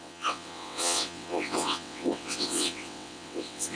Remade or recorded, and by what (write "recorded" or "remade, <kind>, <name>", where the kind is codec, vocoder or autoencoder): remade, vocoder, WaveNeXt